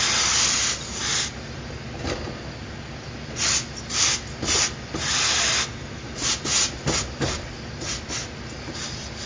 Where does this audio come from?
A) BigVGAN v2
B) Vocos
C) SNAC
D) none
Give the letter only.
D